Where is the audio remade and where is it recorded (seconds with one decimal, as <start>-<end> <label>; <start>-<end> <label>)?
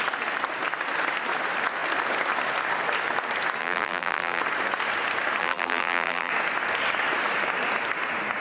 0.0-3.6 recorded; 3.6-4.4 remade; 4.4-5.4 recorded; 5.4-6.3 remade; 6.3-8.4 recorded